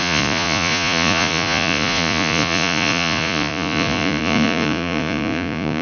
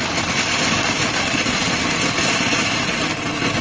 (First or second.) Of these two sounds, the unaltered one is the second